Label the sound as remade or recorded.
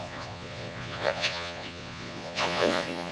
remade